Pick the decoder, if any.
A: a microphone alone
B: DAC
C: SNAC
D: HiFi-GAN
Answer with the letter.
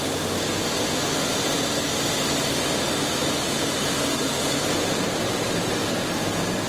A